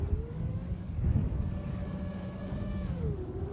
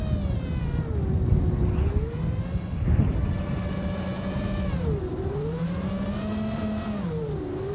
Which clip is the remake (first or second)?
first